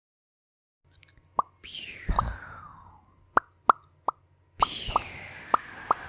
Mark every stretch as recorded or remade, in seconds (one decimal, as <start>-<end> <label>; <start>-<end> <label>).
0.0-6.1 recorded